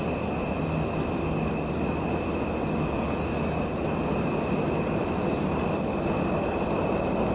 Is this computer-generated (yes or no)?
no